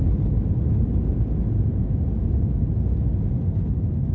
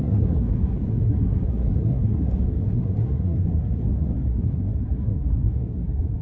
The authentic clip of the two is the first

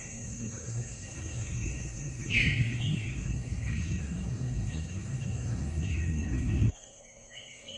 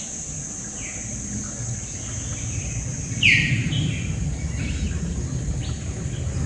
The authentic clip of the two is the second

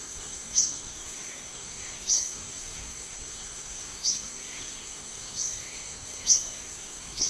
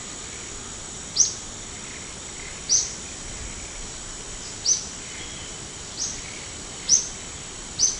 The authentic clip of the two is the second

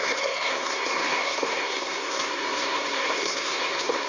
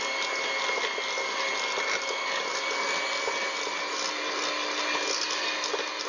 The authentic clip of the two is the second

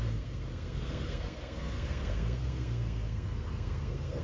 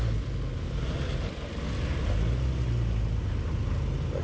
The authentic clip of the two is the second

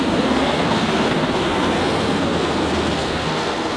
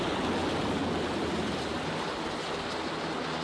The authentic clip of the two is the second